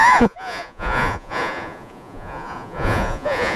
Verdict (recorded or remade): remade